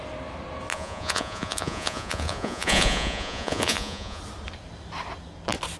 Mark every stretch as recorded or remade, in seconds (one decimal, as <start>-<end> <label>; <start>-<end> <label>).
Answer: 0.0-0.7 recorded; 0.7-4.2 remade; 4.2-5.8 recorded